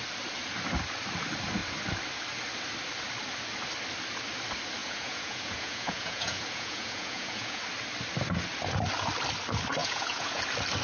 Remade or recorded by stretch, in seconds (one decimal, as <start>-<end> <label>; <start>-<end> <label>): 0.0-4.8 recorded; 4.8-7.6 remade; 7.6-9.8 recorded; 9.8-10.4 remade; 10.4-10.8 recorded